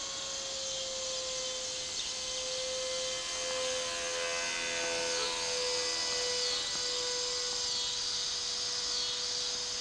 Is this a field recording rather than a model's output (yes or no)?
yes